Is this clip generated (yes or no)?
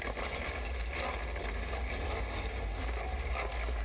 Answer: no